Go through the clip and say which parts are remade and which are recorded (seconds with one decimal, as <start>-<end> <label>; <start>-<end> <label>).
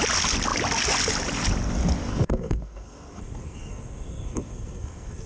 0.0-2.1 recorded; 2.1-5.3 remade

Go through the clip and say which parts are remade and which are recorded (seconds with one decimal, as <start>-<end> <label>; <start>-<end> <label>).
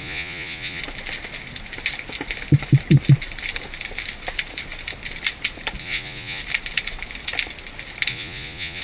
0.0-0.8 remade; 0.8-5.8 recorded; 5.8-6.4 remade; 6.4-8.1 recorded; 8.1-8.8 remade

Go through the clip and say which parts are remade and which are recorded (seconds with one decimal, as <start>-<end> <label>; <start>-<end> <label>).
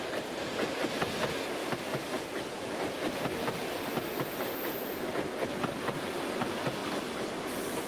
0.0-7.9 recorded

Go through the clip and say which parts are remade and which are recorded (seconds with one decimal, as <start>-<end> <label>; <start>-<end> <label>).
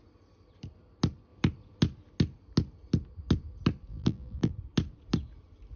0.0-3.9 recorded; 3.9-4.5 remade; 4.5-5.8 recorded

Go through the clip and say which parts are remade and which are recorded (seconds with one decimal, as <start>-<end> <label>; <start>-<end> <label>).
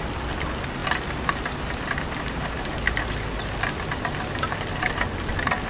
0.0-5.7 recorded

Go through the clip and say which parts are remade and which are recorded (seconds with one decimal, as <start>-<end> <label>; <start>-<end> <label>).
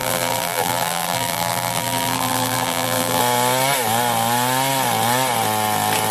0.0-3.2 remade; 3.2-6.1 recorded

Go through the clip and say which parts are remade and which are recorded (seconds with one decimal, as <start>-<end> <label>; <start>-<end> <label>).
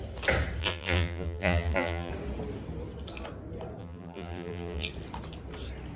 0.0-0.6 recorded; 0.6-2.1 remade; 2.1-3.8 recorded; 3.8-4.9 remade; 4.9-6.0 recorded